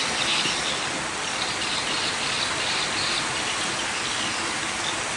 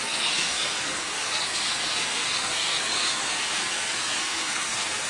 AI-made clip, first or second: second